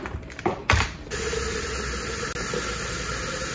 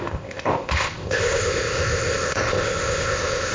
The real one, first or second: first